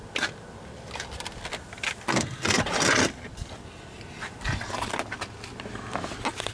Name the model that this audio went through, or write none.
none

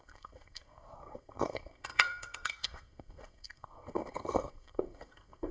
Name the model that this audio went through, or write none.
codec, SNAC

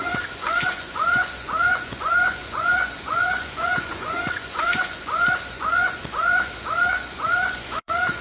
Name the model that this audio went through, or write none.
vocoder, Vocos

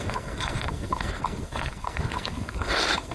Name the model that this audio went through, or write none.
codec, SNAC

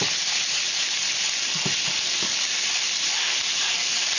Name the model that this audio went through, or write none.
none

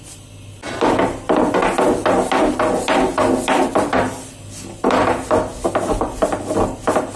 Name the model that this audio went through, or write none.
none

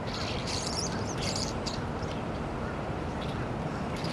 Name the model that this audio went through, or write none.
vocoder, BigVGAN v2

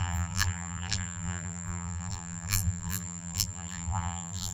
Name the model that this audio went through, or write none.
vocoder, BigVGAN v2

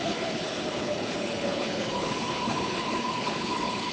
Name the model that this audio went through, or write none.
codec, HILCodec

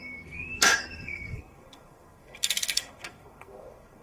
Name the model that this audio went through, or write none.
codec, SNAC